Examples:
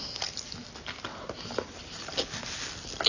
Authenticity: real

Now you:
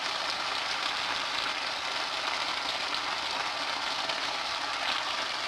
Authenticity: real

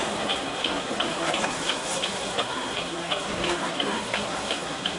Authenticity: fake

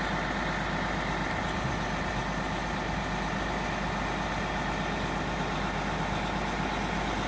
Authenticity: real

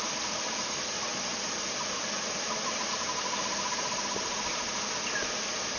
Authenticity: real